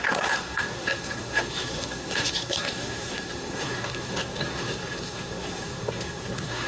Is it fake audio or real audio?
fake